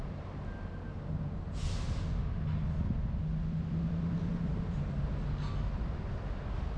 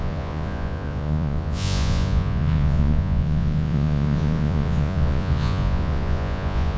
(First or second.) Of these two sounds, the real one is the first